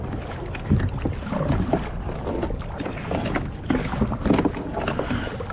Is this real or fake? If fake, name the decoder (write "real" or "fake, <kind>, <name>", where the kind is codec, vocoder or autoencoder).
real